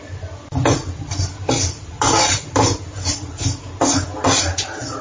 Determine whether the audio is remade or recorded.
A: recorded